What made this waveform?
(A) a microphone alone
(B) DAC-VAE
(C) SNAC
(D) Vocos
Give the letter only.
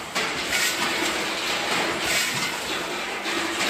A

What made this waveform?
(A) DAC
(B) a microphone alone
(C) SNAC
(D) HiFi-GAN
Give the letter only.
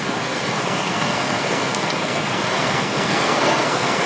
C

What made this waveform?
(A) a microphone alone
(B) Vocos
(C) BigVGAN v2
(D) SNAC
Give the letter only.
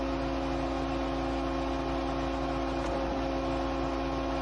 A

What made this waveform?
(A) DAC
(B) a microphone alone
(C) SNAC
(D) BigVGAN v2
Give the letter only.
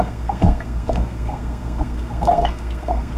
C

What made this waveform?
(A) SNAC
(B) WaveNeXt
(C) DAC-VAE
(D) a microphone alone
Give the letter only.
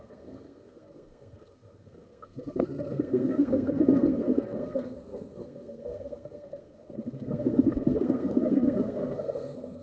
A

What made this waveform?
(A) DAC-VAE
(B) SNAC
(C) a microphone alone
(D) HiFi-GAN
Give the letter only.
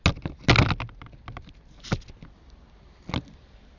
C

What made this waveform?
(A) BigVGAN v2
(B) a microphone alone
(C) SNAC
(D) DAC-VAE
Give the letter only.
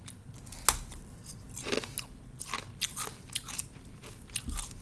B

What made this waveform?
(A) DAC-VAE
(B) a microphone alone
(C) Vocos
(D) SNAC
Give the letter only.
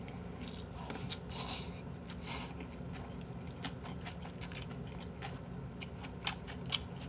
B